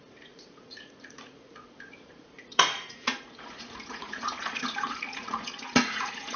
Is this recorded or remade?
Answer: remade